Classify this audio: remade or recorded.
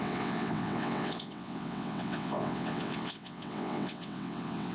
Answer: remade